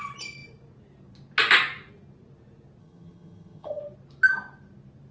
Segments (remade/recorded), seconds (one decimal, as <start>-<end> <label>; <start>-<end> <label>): 0.0-2.8 recorded; 2.8-3.8 remade; 3.8-5.1 recorded